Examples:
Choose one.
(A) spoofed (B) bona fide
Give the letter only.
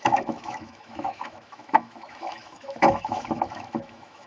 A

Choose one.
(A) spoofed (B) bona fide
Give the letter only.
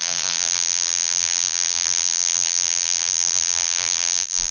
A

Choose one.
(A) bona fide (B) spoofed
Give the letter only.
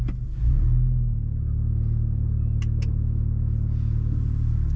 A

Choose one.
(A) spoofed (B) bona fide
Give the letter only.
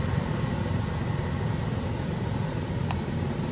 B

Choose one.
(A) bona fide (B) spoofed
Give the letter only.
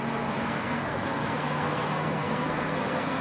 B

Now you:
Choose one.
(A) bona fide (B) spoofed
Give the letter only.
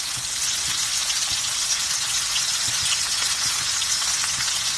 B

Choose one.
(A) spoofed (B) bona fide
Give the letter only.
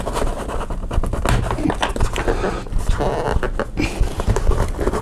B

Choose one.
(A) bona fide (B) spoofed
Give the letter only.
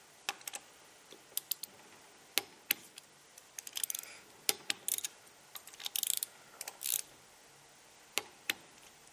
A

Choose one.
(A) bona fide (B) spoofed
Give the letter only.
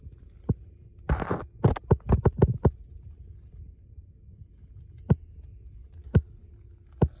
A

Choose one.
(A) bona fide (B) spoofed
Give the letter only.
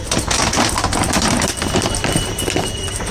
B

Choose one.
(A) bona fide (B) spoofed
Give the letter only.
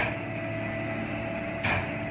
A